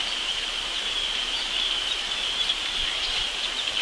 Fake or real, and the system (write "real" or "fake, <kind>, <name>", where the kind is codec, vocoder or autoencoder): fake, vocoder, BigVGAN v2